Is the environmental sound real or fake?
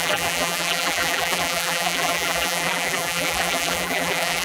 fake